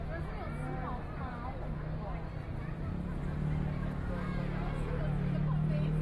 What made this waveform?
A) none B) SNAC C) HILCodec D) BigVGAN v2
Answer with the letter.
A